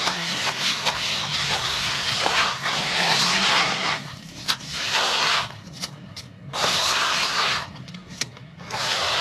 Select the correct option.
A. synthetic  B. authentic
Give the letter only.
A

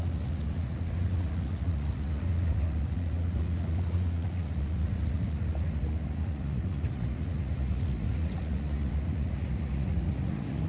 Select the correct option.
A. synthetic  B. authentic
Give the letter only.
A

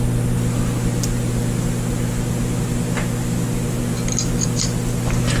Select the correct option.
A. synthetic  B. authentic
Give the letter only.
B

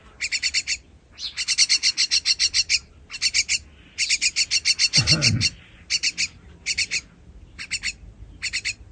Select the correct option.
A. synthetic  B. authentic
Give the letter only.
B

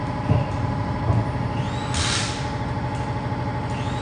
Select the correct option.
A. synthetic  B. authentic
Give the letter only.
B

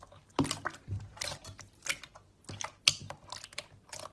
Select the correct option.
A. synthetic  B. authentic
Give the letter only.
B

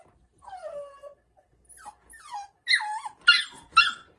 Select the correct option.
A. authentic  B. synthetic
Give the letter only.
A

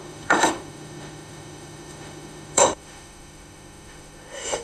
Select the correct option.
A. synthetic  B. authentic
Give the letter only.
A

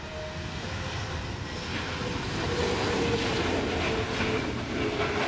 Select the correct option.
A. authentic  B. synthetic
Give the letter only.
A